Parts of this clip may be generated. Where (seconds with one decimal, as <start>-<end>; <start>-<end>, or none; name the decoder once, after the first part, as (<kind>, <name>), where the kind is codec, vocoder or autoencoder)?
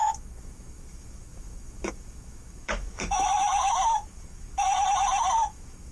0.0-4.7 (autoencoder, DAC-VAE); 5.5-5.9